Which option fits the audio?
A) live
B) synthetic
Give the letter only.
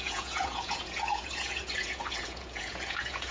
B